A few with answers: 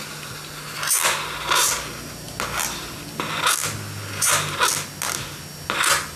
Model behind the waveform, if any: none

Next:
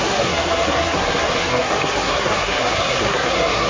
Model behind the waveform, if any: codec, SNAC